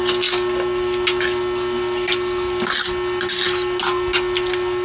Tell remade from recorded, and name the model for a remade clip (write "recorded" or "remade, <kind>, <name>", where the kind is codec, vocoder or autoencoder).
recorded